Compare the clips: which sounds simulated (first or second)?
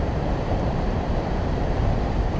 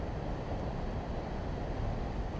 first